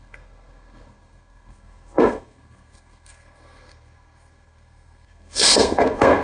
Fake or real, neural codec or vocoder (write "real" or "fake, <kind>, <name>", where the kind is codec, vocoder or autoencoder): fake, codec, SNAC